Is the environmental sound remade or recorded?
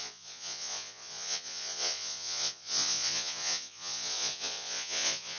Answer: remade